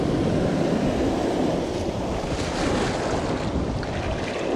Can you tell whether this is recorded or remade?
recorded